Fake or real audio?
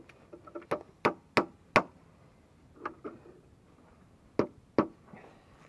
real